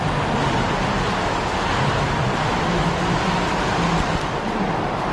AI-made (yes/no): no